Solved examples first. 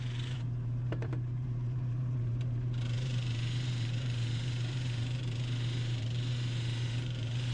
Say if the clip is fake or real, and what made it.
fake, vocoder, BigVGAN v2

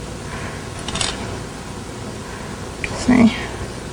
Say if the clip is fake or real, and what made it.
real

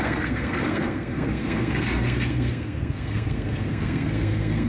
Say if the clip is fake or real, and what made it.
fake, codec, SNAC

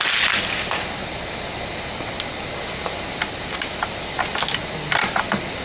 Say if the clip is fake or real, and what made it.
real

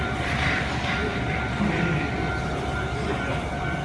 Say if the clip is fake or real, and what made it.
fake, vocoder, BigVGAN v2